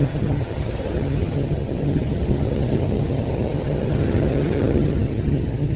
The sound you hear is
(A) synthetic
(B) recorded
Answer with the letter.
A